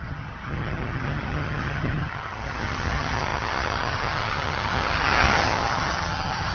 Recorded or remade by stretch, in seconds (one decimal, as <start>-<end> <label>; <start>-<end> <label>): 0.0-6.5 remade